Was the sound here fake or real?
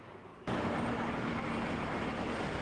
real